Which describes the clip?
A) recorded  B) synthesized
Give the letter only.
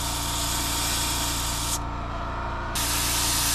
A